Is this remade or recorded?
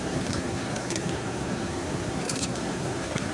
remade